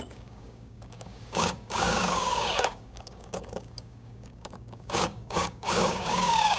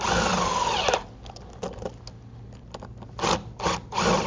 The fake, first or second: first